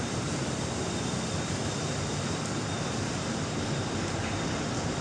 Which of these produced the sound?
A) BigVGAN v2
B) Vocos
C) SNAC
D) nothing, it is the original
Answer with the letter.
A